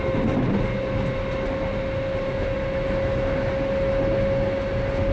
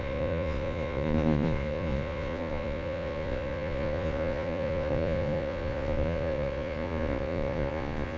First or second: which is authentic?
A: first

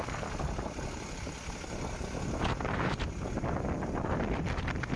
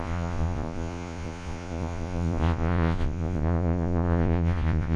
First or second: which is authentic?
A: first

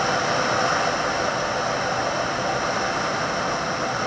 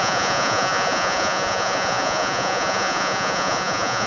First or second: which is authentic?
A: first